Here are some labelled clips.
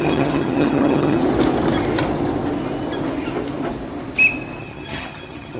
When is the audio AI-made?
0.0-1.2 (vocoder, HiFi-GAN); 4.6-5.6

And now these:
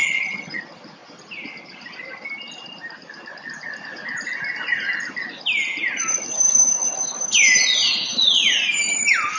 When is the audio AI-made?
0.0-0.6 (vocoder, HiFi-GAN)

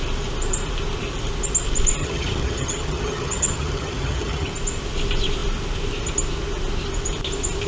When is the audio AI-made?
2.0-4.5 (vocoder, HiFi-GAN)